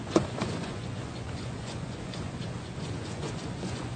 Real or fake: fake